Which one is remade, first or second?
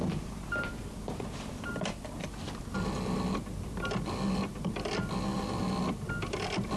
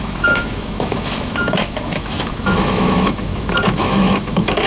second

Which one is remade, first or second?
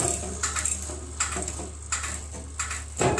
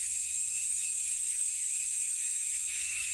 second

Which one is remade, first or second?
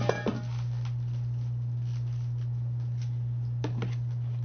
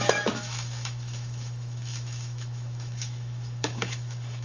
second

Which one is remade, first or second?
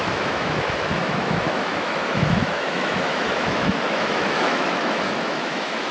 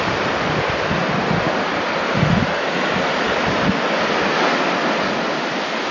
first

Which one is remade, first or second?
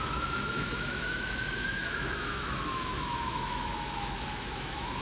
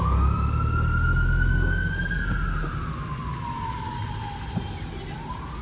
first